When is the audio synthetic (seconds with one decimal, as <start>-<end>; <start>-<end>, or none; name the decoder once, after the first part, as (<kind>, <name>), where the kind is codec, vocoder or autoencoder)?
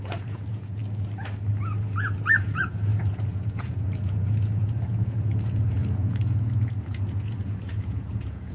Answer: 0.0-0.8 (vocoder, Vocos); 1.5-8.5